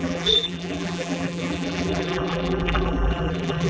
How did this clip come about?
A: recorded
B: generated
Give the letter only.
B